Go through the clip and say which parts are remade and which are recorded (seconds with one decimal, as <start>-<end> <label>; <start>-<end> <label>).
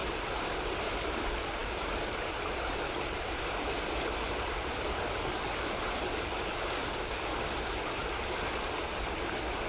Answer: 0.0-1.6 recorded; 1.6-4.7 remade; 4.7-6.8 recorded; 6.8-7.4 remade; 7.4-8.0 recorded; 8.0-8.8 remade; 8.8-9.7 recorded